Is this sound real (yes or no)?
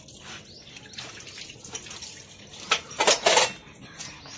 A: yes